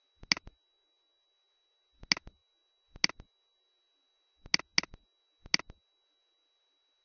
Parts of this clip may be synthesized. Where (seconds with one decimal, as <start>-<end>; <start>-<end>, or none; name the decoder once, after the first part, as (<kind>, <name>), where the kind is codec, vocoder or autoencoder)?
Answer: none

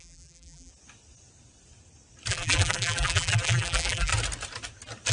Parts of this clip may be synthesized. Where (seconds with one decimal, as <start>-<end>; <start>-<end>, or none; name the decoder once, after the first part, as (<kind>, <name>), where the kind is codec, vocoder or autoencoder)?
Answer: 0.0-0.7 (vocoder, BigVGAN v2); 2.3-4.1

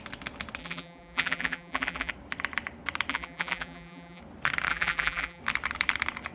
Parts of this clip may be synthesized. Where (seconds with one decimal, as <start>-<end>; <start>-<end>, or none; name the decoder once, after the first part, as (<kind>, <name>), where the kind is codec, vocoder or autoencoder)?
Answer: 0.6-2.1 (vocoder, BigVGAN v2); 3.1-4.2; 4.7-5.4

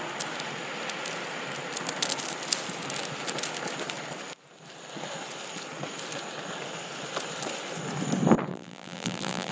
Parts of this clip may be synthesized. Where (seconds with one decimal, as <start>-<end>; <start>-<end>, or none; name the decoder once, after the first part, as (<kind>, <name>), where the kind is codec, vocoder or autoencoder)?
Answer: 8.5-9.5 (vocoder, BigVGAN v2)